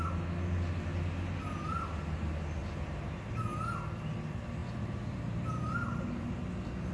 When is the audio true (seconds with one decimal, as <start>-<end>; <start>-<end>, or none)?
0.0-2.6; 3.3-4.6; 6.5-6.9